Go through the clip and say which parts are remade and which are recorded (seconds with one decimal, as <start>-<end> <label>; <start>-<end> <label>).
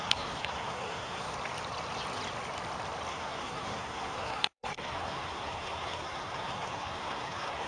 0.0-1.2 remade; 1.2-3.1 recorded; 3.1-7.7 remade